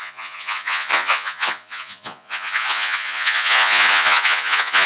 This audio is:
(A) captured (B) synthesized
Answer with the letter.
B